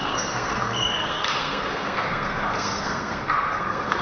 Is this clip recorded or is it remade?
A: remade